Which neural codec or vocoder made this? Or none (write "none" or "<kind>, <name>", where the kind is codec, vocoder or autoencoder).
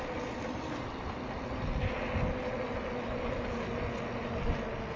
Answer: none